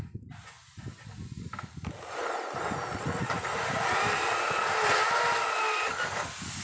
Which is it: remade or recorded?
recorded